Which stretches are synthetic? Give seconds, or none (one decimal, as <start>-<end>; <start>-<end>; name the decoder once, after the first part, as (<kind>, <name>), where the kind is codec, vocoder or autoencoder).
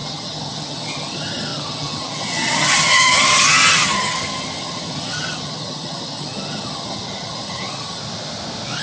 0.0-8.0 (vocoder, HiFi-GAN)